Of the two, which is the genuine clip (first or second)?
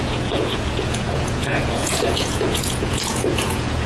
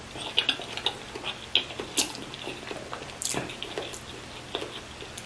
second